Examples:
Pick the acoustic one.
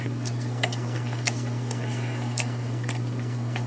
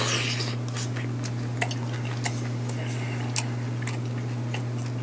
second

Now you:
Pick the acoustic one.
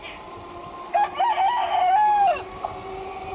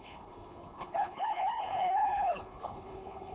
first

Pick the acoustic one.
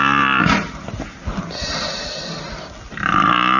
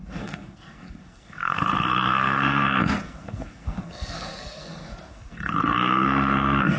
first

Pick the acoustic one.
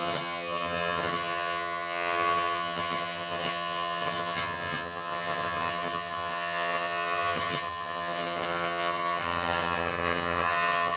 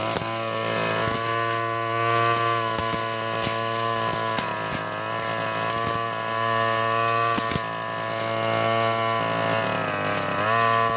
second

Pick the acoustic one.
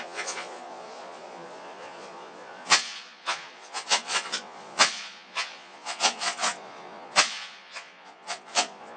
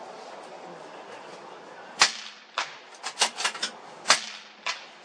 second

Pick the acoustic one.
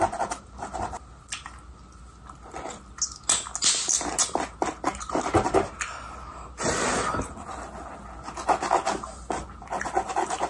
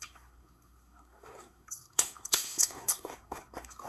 first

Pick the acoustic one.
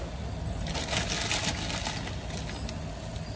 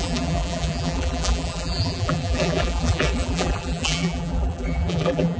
first